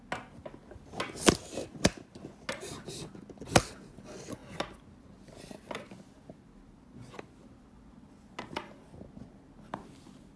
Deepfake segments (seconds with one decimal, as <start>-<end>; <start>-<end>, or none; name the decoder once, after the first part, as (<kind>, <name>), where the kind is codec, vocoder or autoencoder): none